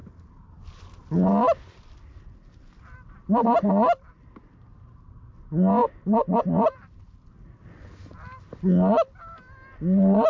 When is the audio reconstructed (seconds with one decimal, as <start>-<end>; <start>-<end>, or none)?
none